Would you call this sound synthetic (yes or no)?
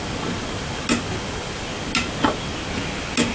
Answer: no